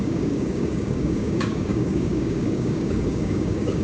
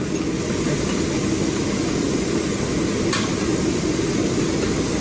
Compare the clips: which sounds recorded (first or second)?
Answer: second